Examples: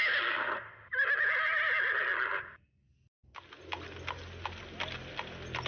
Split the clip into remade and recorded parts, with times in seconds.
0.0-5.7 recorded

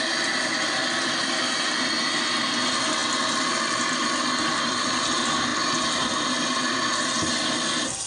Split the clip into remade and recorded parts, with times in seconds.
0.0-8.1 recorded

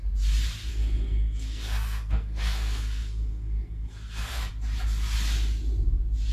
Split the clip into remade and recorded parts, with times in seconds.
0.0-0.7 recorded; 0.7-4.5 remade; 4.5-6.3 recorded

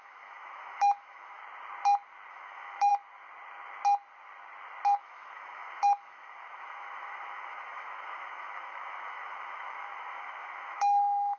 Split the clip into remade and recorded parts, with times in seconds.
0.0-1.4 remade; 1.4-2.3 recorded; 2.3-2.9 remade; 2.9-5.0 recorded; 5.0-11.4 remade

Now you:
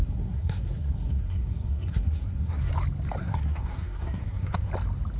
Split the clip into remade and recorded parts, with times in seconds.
0.0-2.7 remade; 2.7-3.2 recorded; 3.2-4.7 remade; 4.7-5.2 recorded

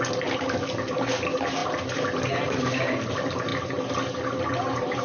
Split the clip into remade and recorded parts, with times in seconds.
0.0-5.0 recorded

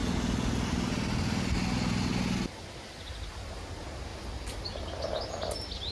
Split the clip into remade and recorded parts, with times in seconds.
0.0-5.9 recorded

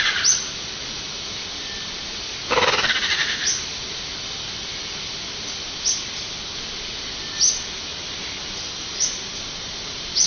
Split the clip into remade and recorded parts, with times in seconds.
0.0-10.3 recorded